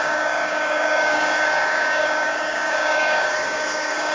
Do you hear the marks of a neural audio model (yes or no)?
yes